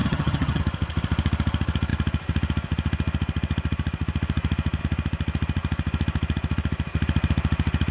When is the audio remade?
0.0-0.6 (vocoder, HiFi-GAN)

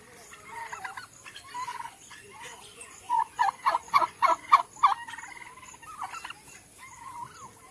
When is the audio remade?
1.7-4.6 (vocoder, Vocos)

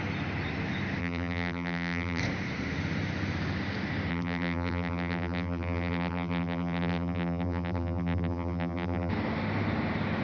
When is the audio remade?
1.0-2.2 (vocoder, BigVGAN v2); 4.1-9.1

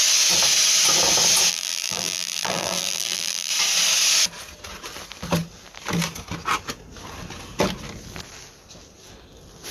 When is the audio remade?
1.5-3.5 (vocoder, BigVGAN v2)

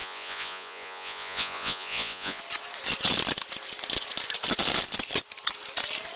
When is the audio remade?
0.0-2.4 (vocoder, Vocos)

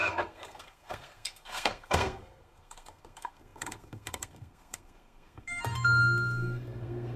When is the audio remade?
0.0-7.2 (codec, SNAC)

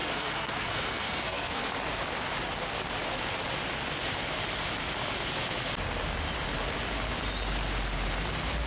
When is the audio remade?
0.0-1.8 (codec, SNAC)

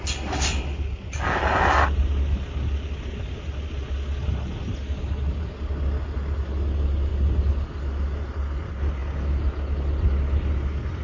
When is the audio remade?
none